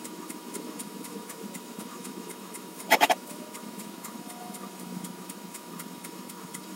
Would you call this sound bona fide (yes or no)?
no